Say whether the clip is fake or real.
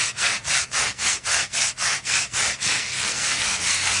fake